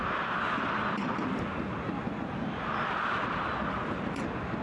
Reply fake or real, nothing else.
real